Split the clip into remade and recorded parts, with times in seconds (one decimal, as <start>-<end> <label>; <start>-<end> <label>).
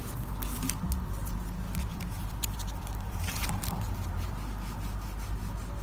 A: 0.0-1.9 recorded; 1.9-4.3 remade; 4.3-5.8 recorded